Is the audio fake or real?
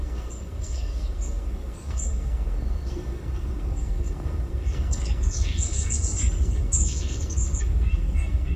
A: fake